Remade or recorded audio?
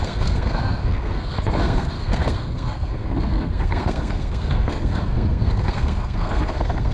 remade